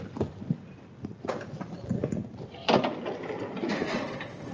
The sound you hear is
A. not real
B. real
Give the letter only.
B